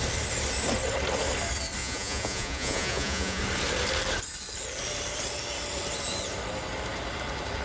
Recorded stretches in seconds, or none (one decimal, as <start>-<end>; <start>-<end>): 0.0-1.8; 3.4-7.6